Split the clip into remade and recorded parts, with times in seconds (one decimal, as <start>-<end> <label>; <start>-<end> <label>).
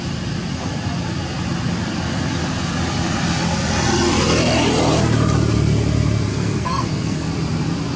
0.0-6.3 recorded; 6.3-7.3 remade; 7.3-8.0 recorded